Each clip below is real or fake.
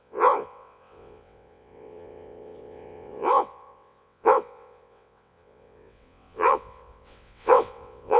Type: fake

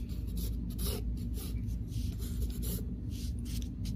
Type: real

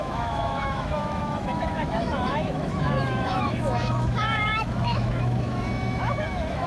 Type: fake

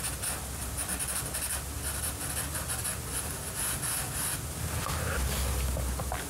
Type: real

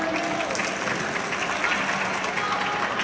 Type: real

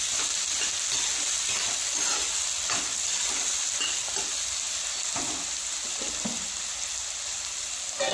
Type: real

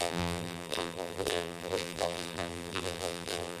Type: fake